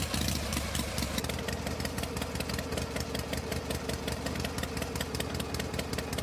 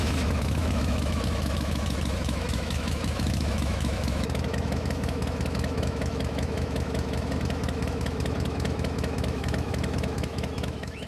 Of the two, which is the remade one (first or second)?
second